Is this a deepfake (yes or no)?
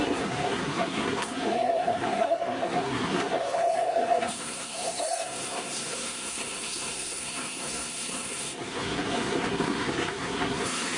yes